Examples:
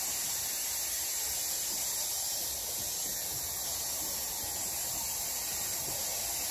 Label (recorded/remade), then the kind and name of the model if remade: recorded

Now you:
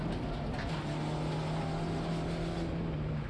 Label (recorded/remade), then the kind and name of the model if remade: recorded